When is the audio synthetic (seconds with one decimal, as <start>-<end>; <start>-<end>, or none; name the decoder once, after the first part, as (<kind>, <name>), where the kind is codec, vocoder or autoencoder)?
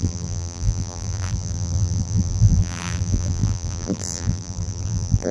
0.0-5.3 (vocoder, BigVGAN v2)